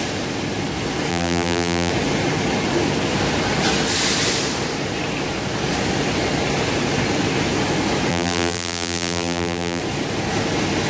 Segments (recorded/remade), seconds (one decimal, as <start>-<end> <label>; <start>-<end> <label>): 0.0-1.1 recorded; 1.1-1.9 remade; 1.9-8.1 recorded; 8.1-9.8 remade; 9.8-10.9 recorded